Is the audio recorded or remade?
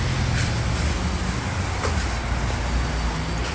recorded